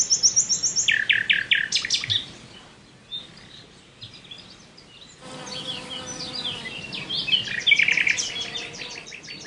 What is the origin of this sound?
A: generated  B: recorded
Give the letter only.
B